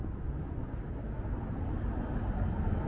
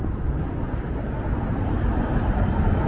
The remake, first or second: second